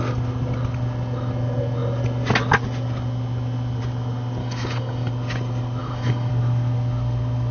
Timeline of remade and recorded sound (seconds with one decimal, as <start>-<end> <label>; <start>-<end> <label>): 0.0-4.4 recorded; 4.4-5.1 remade; 5.1-5.8 recorded; 5.8-6.3 remade; 6.3-7.5 recorded